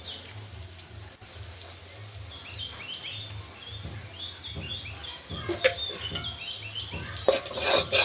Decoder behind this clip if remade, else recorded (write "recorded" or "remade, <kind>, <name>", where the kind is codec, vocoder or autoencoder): recorded